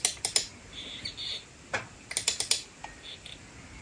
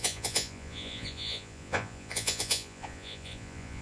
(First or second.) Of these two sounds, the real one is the first